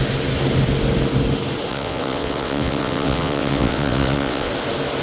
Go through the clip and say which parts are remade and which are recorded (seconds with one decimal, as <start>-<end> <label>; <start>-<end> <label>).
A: 0.0-1.7 recorded; 1.7-4.5 remade; 4.5-5.0 recorded